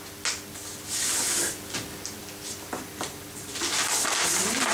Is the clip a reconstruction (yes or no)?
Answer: no